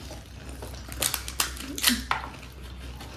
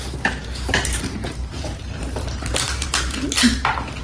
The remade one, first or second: second